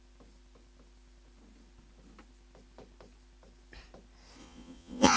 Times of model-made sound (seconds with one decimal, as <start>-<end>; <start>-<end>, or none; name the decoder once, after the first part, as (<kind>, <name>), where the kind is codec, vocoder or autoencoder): 4.4-5.2 (vocoder, Vocos)